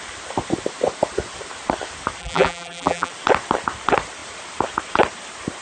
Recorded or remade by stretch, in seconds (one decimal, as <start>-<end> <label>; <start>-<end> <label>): 0.0-2.2 recorded; 2.2-3.1 remade; 3.1-5.6 recorded